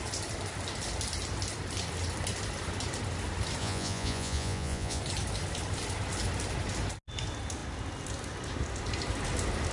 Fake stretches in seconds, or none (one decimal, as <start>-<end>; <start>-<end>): 3.6-5.0